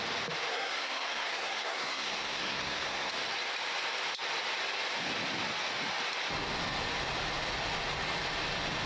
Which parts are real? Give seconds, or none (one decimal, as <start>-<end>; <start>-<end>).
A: 0.0-0.5; 3.1-8.9